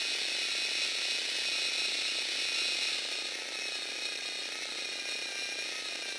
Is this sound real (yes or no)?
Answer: yes